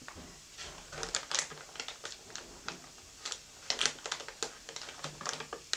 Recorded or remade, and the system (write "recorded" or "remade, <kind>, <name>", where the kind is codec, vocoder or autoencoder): recorded